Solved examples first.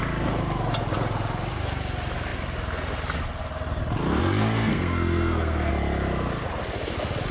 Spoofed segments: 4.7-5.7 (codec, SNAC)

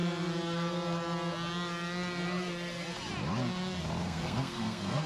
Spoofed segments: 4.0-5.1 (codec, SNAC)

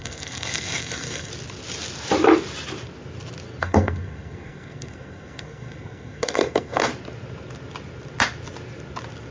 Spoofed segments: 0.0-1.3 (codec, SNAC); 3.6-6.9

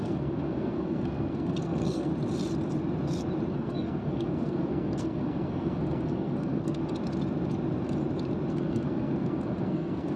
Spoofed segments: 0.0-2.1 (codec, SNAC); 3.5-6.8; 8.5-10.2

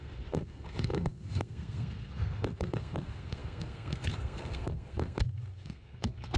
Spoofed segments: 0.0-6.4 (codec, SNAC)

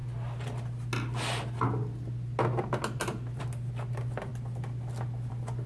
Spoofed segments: none

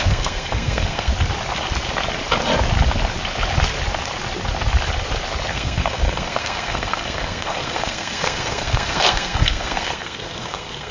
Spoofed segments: 0.0-1.1 (codec, SNAC); 5.5-10.9